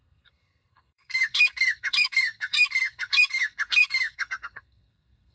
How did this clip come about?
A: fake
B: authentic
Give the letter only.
A